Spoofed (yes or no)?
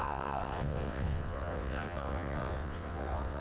yes